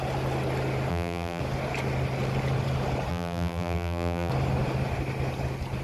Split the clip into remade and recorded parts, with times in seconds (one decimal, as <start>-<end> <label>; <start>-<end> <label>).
0.0-0.9 recorded; 0.9-1.4 remade; 1.4-3.1 recorded; 3.1-4.3 remade; 4.3-5.8 recorded